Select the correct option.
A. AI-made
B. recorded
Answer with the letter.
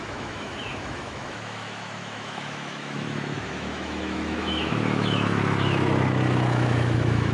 A